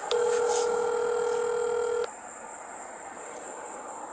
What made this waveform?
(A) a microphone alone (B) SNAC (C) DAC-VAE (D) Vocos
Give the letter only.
A